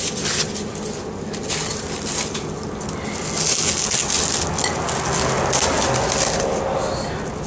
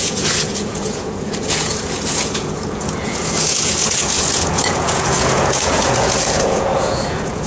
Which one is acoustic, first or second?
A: first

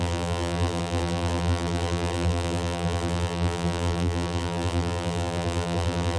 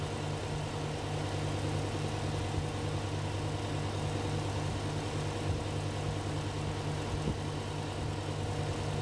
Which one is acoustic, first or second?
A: second